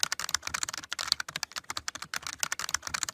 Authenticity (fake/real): real